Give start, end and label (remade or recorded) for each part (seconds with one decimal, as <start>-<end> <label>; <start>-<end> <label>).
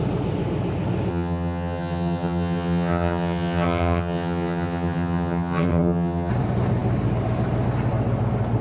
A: 0.0-1.1 recorded; 1.1-6.3 remade; 6.3-8.6 recorded